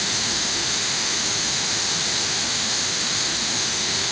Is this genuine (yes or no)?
no